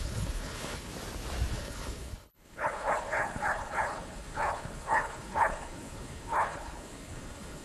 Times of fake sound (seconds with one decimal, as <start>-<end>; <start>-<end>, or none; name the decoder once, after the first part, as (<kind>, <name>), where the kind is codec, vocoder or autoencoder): 0.0-0.9 (codec, HILCodec); 1.5-7.6